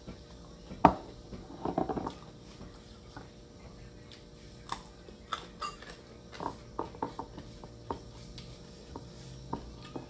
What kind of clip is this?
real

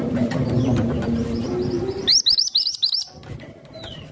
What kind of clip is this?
real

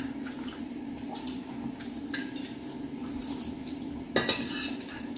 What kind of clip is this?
real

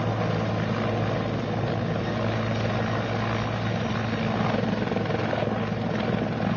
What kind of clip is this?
real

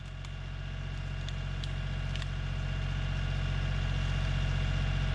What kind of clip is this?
real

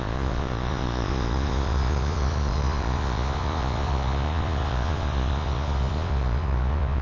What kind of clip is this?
fake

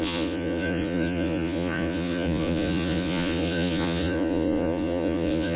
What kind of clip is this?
fake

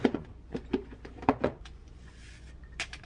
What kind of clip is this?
fake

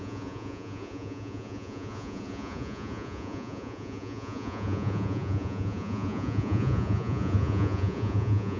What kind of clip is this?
fake